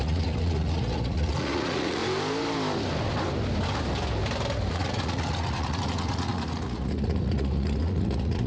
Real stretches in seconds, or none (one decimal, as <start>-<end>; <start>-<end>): 2.0-4.7